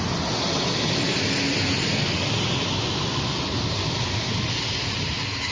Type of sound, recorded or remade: recorded